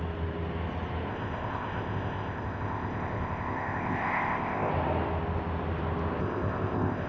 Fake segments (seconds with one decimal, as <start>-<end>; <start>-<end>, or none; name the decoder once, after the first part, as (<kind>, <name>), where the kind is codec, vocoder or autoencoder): 1.1-4.7 (codec, ZipCodec); 6.2-7.1